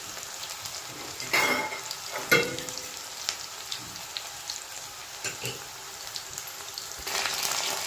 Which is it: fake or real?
real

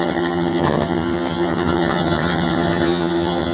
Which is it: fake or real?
fake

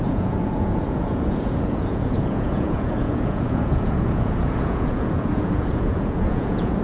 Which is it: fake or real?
fake